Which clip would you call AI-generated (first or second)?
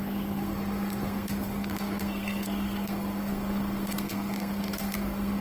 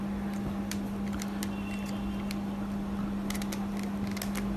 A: first